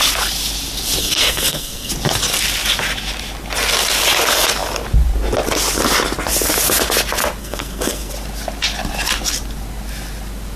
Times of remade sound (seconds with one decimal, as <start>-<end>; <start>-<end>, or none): 1.0-1.9; 7.4-8.1